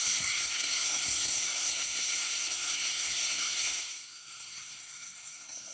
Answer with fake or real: fake